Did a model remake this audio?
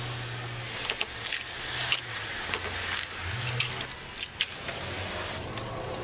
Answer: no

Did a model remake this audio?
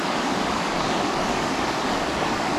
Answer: yes